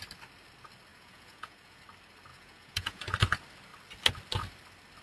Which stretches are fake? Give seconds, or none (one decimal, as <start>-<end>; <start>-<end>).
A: 0.9-1.8; 2.3-3.0